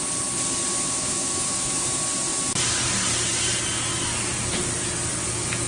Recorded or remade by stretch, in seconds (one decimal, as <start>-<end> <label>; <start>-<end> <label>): 0.0-0.8 recorded; 0.8-2.0 remade; 2.0-5.7 recorded